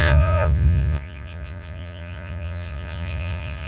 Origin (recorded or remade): remade